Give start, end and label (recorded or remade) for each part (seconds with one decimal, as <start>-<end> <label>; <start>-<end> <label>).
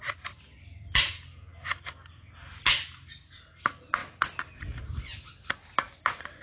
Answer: 0.0-6.4 recorded